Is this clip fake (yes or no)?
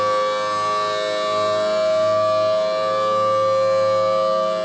no